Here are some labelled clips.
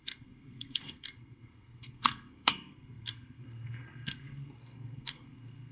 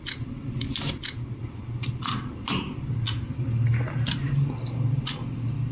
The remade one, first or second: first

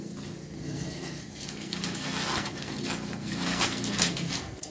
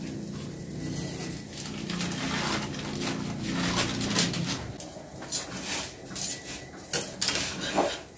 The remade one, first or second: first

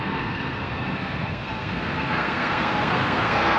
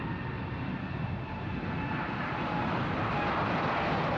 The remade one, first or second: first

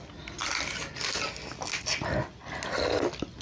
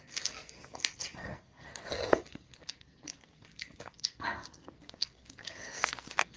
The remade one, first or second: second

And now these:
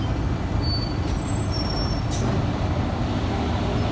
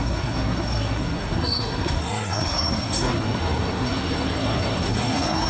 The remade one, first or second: second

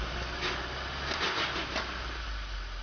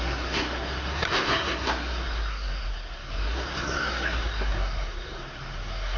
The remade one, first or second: second